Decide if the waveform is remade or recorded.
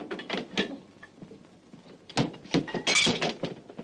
recorded